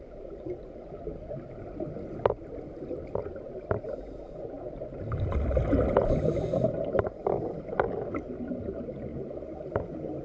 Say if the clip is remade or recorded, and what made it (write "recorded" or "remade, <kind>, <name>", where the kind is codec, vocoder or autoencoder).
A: recorded